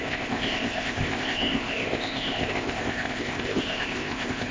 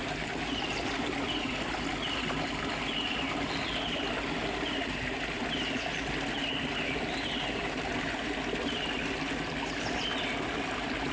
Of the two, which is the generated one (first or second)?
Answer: first